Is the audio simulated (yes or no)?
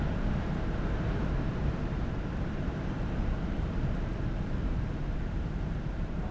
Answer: yes